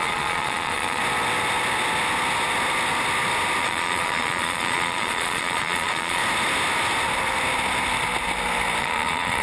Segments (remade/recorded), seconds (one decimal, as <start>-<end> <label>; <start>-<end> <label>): 0.0-1.0 remade; 1.0-3.6 recorded; 3.6-6.2 remade; 6.2-8.8 recorded; 8.8-9.4 remade

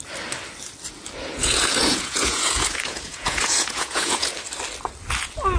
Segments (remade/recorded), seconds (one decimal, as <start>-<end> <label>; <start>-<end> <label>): 0.0-1.4 recorded; 1.4-4.3 remade; 4.3-5.6 recorded

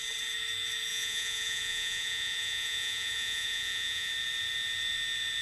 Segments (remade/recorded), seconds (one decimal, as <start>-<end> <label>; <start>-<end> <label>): 0.0-0.9 recorded; 0.9-4.1 remade; 4.1-5.4 recorded